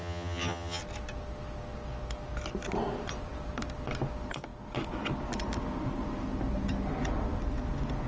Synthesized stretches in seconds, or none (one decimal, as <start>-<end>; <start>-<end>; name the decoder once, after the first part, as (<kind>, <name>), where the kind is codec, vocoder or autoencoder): 0.0-0.8 (vocoder, HiFi-GAN)